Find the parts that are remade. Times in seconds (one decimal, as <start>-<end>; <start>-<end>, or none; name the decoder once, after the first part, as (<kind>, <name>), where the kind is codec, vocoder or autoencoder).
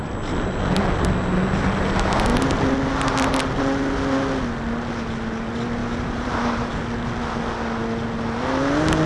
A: 5.8-6.7 (vocoder, BigVGAN v2)